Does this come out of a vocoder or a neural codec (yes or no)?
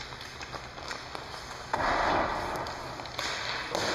no